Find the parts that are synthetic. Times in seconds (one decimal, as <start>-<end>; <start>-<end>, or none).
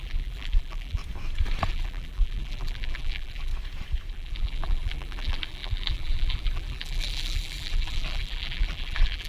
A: 0.0-1.0; 1.7-3.5; 4.1-9.3